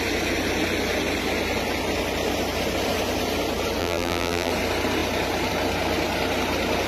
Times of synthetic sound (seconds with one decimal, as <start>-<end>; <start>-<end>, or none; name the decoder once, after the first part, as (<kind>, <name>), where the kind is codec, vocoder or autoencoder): 3.8-4.5 (vocoder, BigVGAN v2)